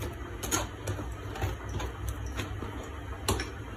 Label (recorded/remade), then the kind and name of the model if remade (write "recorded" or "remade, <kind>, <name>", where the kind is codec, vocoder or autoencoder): recorded